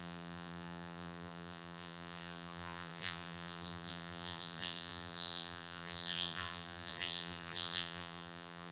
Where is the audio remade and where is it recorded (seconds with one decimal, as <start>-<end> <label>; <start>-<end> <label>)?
0.0-8.7 remade